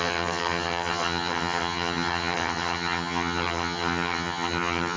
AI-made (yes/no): yes